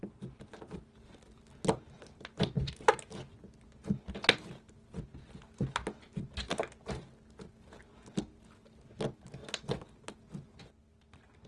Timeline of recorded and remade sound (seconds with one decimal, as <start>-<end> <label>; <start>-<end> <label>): 0.0-11.5 recorded